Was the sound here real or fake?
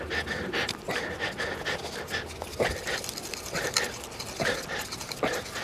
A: real